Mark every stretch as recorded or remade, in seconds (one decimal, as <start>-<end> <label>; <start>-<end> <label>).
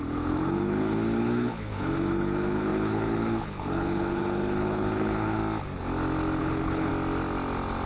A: 0.0-5.4 remade; 5.4-6.4 recorded; 6.4-6.9 remade; 6.9-7.9 recorded